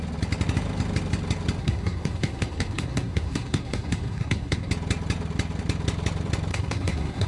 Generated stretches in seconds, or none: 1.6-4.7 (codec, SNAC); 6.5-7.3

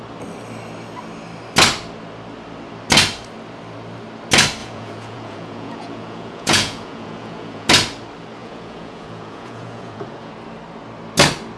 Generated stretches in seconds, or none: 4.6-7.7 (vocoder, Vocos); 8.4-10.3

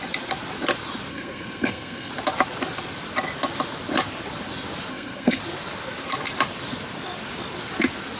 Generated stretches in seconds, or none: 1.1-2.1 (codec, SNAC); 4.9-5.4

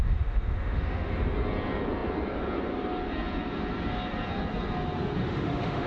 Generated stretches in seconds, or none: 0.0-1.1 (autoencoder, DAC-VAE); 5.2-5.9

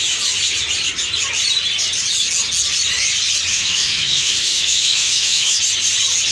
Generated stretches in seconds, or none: 3.5-5.6 (autoencoder, DAC-VAE)